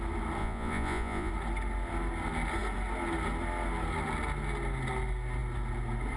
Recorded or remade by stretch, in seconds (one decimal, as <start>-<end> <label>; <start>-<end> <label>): 0.0-0.4 recorded; 0.4-1.3 remade; 1.3-6.2 recorded